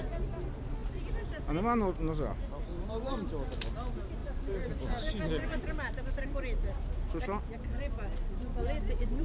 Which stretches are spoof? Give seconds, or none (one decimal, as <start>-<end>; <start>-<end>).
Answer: 2.7-3.3; 4.2-4.7